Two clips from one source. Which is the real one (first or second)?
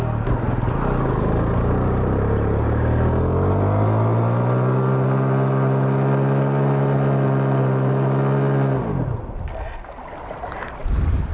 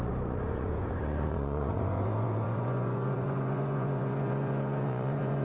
first